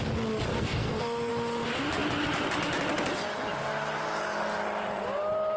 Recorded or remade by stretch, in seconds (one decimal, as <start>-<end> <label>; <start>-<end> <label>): 0.0-0.5 recorded; 0.5-1.3 remade; 1.3-5.6 recorded